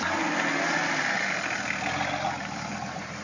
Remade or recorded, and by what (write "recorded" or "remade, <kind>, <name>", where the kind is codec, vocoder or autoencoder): recorded